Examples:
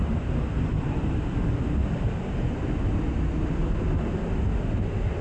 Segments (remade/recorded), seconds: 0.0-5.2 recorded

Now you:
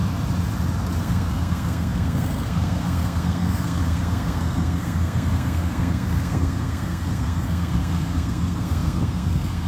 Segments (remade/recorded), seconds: 0.0-1.0 recorded; 1.0-9.7 remade

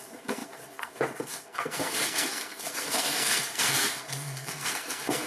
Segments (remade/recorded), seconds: 0.0-5.3 remade